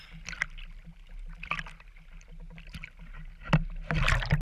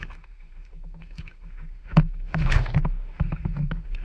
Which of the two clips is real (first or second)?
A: first